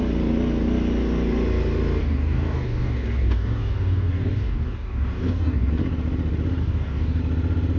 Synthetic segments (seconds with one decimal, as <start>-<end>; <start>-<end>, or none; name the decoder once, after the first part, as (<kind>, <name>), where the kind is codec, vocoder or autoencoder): 2.0-5.7 (codec, DAC); 6.6-7.2